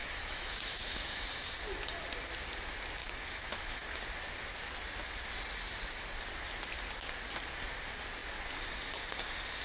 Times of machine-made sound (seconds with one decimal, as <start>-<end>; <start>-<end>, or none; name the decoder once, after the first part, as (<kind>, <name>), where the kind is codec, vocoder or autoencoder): 0.0-1.2 (autoencoder, DAC-VAE); 3.0-4.0